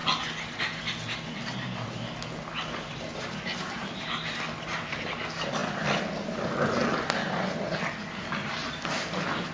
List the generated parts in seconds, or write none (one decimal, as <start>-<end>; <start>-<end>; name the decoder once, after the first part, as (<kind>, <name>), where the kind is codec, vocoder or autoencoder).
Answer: none